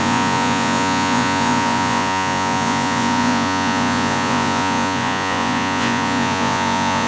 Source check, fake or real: fake